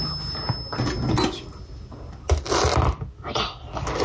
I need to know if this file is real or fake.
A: real